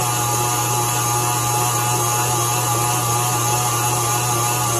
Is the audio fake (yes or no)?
no